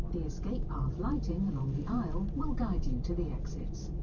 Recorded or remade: remade